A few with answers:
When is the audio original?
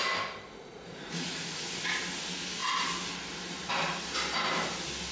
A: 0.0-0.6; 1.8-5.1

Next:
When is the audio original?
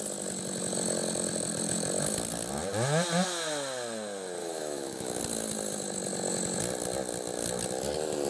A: 0.0-4.4; 5.2-8.3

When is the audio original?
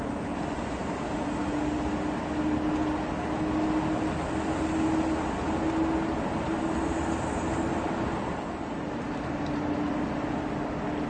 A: 0.0-11.1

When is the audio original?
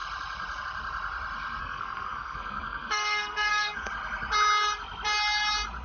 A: 0.0-1.6; 3.9-5.8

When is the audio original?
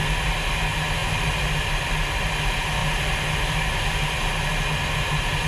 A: 0.0-5.5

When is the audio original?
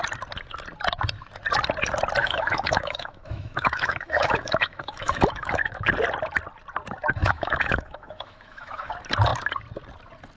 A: 0.0-2.2; 5.9-7.2; 8.9-10.4